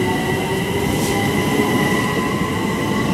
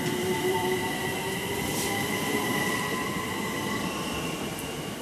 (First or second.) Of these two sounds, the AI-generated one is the second